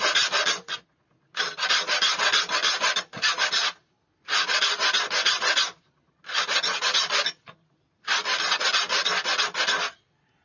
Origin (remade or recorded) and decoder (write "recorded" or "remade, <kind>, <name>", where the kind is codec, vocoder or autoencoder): recorded